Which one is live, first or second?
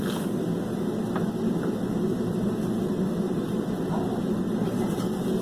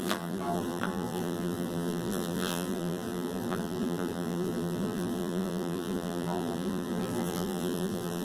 first